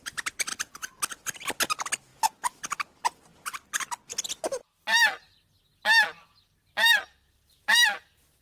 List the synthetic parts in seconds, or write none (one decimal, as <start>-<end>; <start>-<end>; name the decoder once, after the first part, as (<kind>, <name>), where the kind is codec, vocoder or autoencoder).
2.1-2.6 (vocoder, BigVGAN v2)